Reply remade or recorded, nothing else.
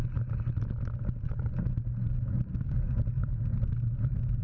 recorded